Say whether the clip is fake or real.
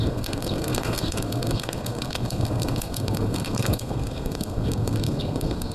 fake